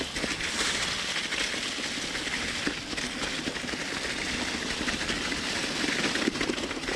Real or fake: real